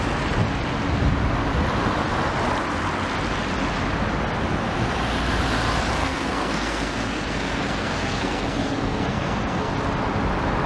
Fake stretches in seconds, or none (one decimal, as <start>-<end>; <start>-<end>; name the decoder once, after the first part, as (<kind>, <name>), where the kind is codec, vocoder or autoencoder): 6.0-9.7 (codec, SNAC)